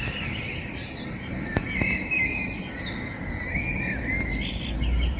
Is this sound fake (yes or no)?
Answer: no